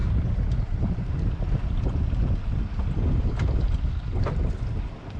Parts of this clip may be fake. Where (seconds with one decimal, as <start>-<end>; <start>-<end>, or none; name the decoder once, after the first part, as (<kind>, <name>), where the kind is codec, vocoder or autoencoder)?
none